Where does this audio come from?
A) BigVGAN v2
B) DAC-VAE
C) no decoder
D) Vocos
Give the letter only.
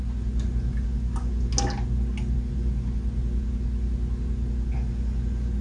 C